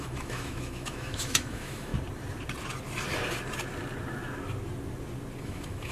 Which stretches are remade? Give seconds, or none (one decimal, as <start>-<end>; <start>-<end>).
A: 0.0-1.9; 5.4-5.9